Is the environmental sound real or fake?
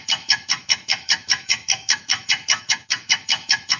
fake